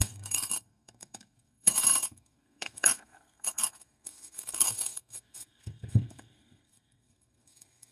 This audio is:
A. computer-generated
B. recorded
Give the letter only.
A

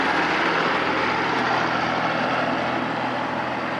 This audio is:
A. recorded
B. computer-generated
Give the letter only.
A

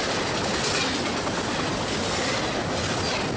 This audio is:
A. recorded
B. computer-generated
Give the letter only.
A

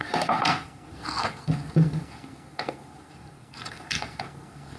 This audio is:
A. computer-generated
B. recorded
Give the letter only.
A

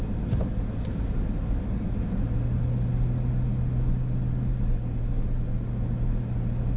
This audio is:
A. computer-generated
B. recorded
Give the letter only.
B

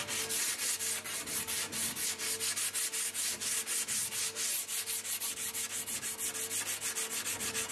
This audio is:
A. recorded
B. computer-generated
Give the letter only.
A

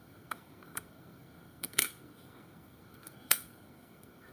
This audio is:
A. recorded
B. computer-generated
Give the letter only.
B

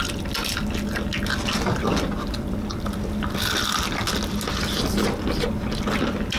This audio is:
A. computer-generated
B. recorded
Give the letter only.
B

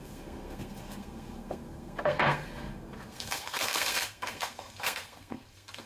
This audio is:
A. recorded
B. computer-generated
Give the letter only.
B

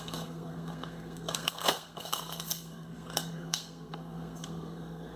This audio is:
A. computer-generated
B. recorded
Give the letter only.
A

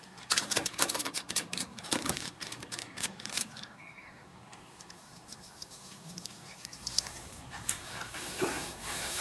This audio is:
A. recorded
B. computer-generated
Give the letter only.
B